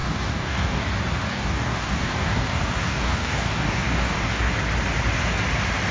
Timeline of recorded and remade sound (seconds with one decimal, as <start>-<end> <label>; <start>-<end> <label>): 0.0-0.9 remade; 0.9-1.3 recorded; 1.3-4.5 remade; 4.5-5.9 recorded